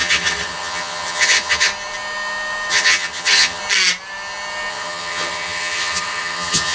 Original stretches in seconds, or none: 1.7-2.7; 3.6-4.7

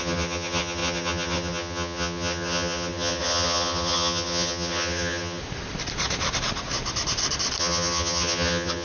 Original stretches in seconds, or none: 5.4-7.6

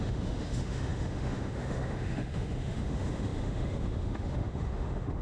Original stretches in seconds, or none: none

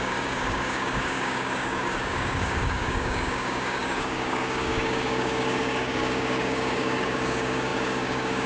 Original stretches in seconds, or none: none